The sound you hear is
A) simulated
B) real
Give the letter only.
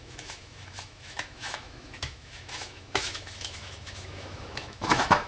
A